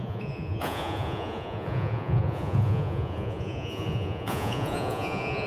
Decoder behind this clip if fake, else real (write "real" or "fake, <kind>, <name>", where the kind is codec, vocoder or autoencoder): fake, vocoder, Vocos